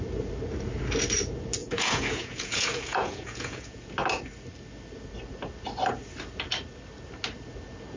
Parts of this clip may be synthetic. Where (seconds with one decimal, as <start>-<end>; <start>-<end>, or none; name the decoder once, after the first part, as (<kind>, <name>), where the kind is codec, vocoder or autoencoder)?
1.6-3.9 (vocoder, Vocos)

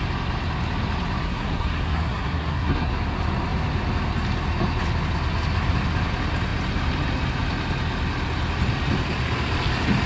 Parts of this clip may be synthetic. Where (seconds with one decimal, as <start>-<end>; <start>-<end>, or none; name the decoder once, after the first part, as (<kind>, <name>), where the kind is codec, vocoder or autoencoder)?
1.2-2.9 (codec, SNAC)

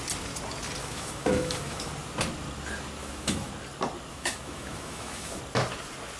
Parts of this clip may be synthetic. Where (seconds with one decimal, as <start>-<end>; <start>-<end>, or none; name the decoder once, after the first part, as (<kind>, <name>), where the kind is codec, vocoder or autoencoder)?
0.8-1.9 (autoencoder, DAC-VAE); 3.0-3.5; 4.1-5.4

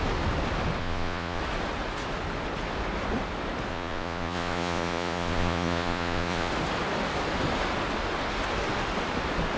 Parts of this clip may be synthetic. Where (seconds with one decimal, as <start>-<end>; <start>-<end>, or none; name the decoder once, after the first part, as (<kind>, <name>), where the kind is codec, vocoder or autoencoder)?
0.8-1.4 (vocoder, Vocos); 3.7-6.5